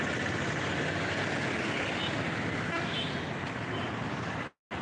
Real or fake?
real